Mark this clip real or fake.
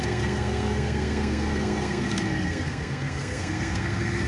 fake